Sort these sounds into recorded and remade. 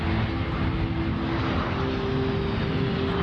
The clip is recorded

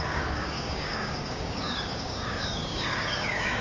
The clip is remade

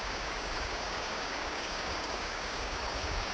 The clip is remade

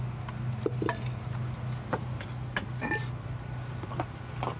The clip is recorded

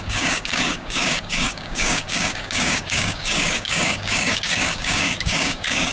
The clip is remade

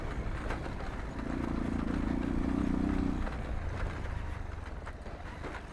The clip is recorded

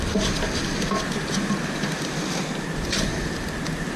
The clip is recorded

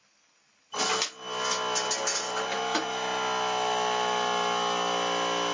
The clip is recorded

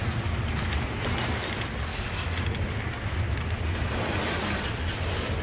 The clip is recorded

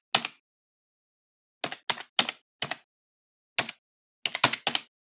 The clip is recorded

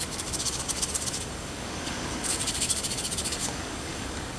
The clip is remade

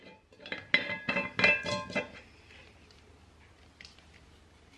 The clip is recorded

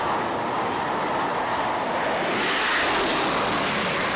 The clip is recorded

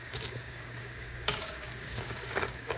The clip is remade